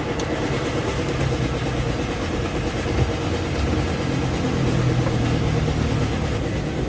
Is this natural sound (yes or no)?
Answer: yes